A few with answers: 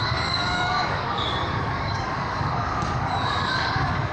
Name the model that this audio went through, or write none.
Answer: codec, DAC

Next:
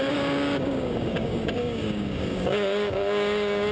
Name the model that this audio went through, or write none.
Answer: codec, DAC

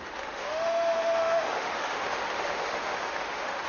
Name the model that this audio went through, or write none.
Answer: autoencoder, DAC-VAE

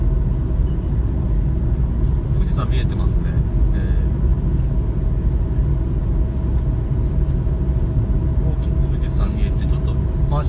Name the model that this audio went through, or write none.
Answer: none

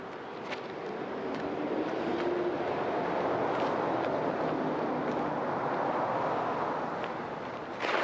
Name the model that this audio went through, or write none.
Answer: none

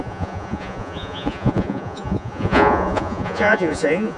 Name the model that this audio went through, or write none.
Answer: vocoder, Vocos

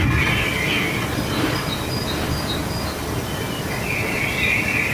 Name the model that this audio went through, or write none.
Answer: none